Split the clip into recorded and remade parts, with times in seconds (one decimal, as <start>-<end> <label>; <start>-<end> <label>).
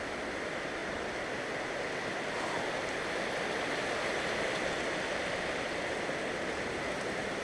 0.0-7.4 recorded